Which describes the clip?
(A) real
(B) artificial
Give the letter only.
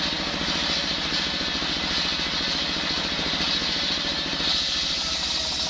A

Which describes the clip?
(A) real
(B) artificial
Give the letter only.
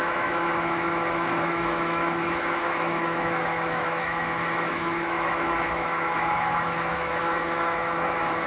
B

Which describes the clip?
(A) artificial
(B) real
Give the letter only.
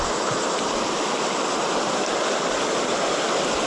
B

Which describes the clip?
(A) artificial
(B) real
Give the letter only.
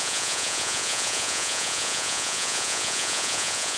A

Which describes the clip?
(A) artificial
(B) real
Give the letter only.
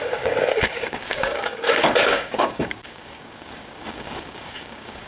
A